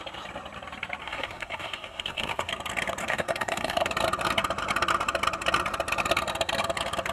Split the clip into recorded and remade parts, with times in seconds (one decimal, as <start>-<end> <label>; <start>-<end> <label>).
0.0-1.0 recorded; 1.0-2.5 remade; 2.5-3.0 recorded; 3.0-3.9 remade; 3.9-7.1 recorded